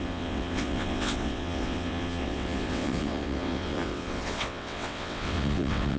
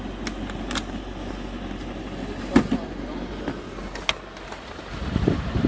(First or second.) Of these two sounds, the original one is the second